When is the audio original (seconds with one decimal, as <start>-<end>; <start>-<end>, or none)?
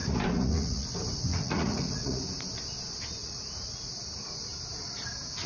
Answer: 0.9-1.3; 2.2-3.2; 3.9-5.5